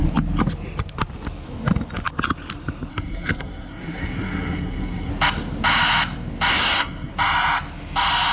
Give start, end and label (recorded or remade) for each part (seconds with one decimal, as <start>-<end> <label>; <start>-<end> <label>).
0.0-2.9 recorded; 2.9-5.1 remade; 5.1-6.5 recorded; 6.5-7.1 remade; 7.1-8.3 recorded